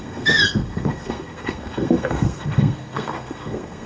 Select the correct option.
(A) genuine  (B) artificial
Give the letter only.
B